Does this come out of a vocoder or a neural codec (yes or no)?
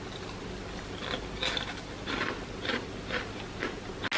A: no